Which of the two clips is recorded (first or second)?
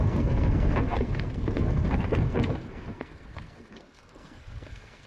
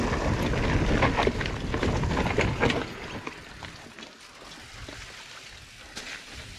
second